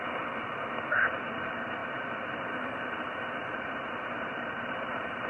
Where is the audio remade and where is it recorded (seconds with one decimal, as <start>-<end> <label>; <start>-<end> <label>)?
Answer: 0.0-5.3 remade